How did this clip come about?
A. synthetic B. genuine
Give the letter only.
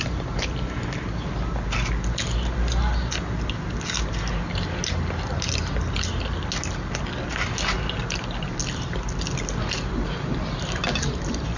B